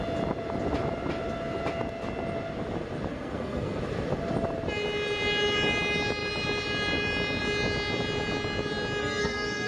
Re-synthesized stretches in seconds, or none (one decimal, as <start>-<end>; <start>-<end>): 3.1-3.8; 9.0-9.7